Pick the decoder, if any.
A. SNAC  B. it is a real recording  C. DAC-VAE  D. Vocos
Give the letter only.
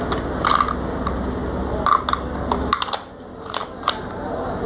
B